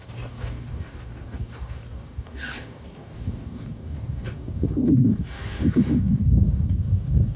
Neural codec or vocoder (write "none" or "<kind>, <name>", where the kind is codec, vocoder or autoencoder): codec, DAC